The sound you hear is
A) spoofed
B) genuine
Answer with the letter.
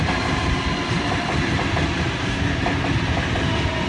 B